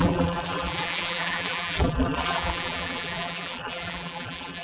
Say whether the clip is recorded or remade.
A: remade